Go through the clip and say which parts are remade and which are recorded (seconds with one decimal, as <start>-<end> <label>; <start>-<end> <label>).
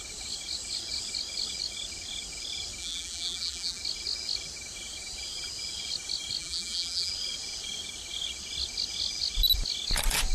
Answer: 0.0-2.8 recorded; 2.8-3.8 remade; 3.8-6.4 recorded; 6.4-7.1 remade; 7.1-10.3 recorded